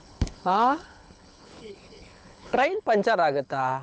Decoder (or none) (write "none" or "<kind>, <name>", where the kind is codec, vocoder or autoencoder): codec, HILCodec